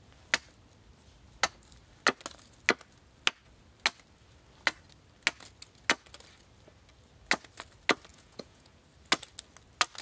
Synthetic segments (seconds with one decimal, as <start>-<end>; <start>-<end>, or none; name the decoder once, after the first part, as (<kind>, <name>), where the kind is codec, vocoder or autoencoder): 8.1-8.8 (vocoder, Vocos)